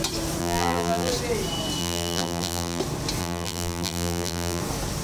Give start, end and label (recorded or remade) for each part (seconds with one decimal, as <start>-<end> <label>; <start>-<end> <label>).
0.0-0.4 recorded; 0.4-1.1 remade; 1.1-1.8 recorded; 1.8-2.8 remade; 2.8-3.2 recorded; 3.2-4.6 remade; 4.6-5.0 recorded